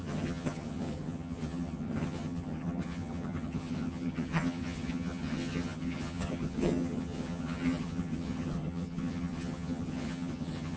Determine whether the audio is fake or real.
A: fake